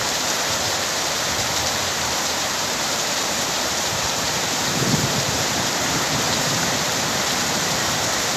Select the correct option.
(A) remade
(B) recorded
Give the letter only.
A